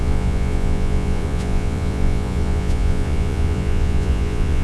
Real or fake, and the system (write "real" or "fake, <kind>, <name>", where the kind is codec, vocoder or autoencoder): fake, vocoder, Vocos